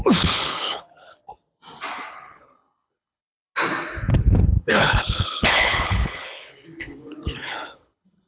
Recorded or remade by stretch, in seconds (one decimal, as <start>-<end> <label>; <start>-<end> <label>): 0.0-1.2 remade; 1.2-2.1 recorded; 2.1-3.2 remade; 3.2-4.1 recorded; 4.1-8.3 remade